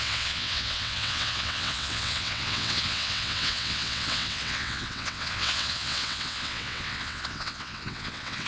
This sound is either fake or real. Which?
fake